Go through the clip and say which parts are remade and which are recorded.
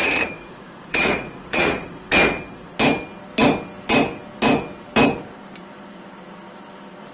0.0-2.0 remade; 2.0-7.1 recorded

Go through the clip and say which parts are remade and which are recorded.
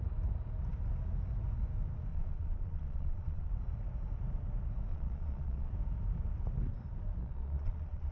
0.0-2.1 recorded; 2.1-3.5 remade; 3.5-4.9 recorded; 4.9-5.7 remade; 5.7-7.2 recorded; 7.2-8.1 remade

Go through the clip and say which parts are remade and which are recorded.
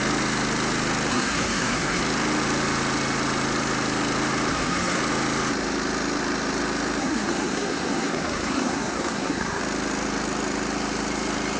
0.0-1.1 recorded; 1.1-2.0 remade; 2.0-4.5 recorded; 4.5-5.0 remade; 5.0-7.0 recorded; 7.0-9.6 remade; 9.6-11.6 recorded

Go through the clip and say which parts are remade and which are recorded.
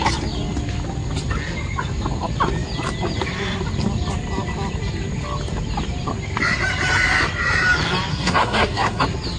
0.0-8.1 recorded; 8.1-9.0 remade; 9.0-9.4 recorded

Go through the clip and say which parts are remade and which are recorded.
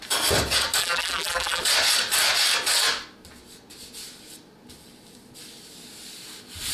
0.0-0.8 recorded; 0.8-1.6 remade; 1.6-6.7 recorded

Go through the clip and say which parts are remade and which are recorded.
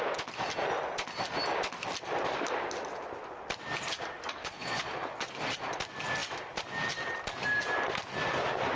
0.0-4.4 recorded; 4.4-5.3 remade; 5.3-8.8 recorded